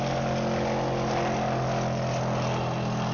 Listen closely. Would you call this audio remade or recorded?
recorded